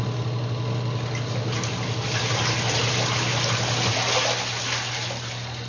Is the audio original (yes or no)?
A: yes